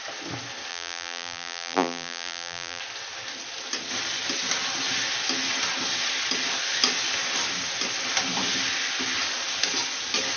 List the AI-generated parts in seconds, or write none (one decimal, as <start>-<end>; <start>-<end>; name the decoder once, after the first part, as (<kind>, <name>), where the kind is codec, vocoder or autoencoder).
0.7-2.8 (vocoder, BigVGAN v2)